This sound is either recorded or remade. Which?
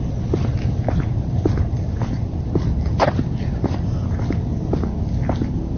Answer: recorded